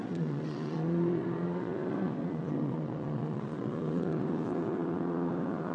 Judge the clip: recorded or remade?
remade